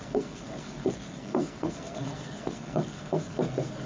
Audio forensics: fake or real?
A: fake